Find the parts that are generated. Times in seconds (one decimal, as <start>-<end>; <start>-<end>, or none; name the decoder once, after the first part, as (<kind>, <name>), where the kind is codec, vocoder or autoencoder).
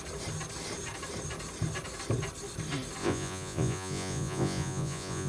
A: 3.0-5.3 (vocoder, Vocos)